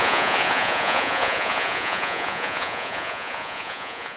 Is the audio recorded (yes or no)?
no